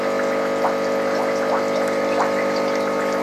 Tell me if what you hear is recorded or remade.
recorded